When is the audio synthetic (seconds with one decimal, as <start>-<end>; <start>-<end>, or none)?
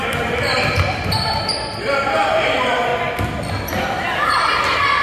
0.0-2.9